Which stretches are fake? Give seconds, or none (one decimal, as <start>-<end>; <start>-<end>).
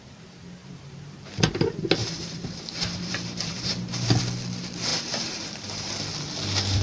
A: 0.6-1.3; 2.0-4.1; 4.9-5.9